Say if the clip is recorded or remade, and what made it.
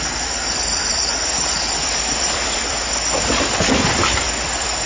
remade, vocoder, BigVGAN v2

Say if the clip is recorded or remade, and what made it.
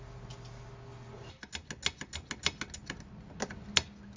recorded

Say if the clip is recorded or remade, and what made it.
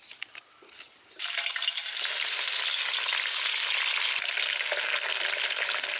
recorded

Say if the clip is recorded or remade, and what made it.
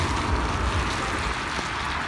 recorded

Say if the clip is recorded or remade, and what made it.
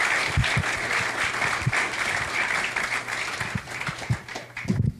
recorded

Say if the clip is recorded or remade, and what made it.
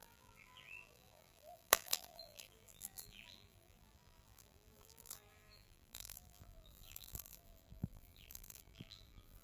remade, vocoder, BigVGAN v2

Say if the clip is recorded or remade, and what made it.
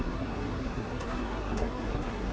remade, codec, SNAC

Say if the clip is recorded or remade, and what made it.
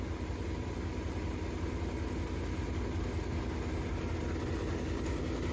recorded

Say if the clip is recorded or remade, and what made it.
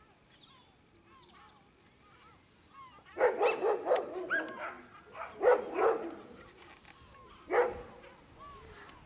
recorded